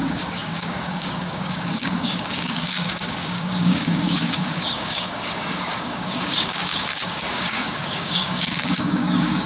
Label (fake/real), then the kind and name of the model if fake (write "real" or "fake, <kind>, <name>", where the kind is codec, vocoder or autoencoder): fake, codec, DAC